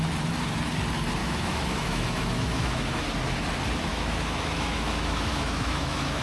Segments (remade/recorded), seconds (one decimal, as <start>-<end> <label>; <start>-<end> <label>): 0.0-1.2 recorded; 1.2-3.0 remade; 3.0-3.9 recorded; 3.9-6.2 remade